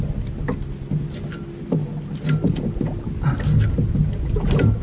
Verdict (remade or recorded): recorded